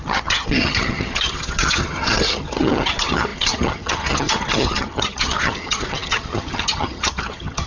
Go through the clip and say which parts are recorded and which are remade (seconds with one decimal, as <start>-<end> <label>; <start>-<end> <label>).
0.0-7.7 remade